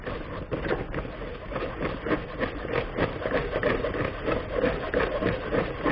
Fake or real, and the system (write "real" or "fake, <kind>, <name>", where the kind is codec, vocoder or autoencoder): real